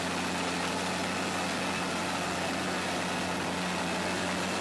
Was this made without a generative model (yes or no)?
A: yes